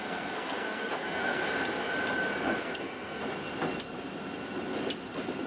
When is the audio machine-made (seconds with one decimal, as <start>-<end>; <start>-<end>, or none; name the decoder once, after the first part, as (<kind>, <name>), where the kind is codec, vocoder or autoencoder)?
0.0-1.4 (codec, SNAC); 2.4-3.2